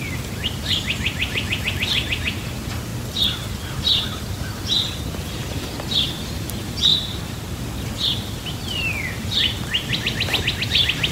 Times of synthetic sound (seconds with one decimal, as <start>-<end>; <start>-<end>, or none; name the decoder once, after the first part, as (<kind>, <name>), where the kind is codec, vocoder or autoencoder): 6.9-7.6 (vocoder, BigVGAN v2)